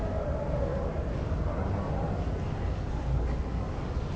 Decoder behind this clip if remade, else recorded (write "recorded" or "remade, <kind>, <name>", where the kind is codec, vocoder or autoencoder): recorded